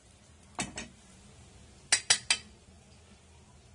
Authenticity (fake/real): real